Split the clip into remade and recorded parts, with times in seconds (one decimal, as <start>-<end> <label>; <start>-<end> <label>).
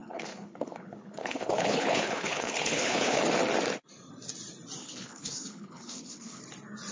0.0-3.2 remade; 3.2-4.8 recorded; 4.8-6.4 remade; 6.4-6.9 recorded